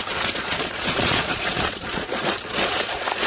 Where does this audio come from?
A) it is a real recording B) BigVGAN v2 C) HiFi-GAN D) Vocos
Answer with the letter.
D